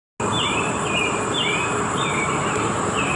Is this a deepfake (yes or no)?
no